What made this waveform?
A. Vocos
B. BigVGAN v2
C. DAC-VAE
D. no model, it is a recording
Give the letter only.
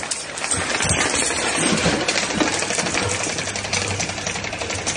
D